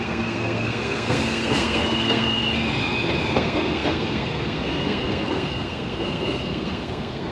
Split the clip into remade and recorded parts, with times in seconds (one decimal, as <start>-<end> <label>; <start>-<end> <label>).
0.0-2.4 remade; 2.4-3.3 recorded; 3.3-7.3 remade